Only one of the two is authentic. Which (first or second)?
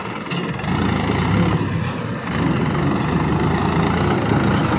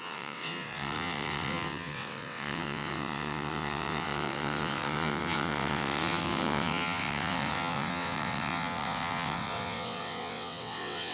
first